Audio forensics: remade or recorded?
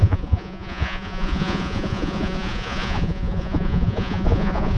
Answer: remade